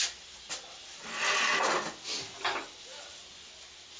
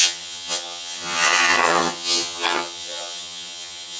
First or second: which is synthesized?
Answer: second